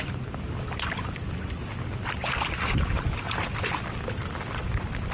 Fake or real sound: real